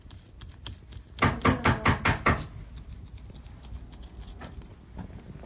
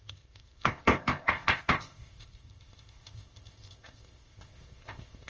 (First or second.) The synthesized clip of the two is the second